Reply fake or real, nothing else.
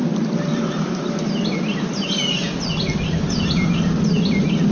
real